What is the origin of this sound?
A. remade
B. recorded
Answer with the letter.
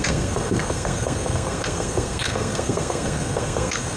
A